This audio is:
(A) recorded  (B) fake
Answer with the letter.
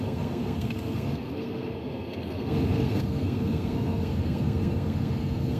B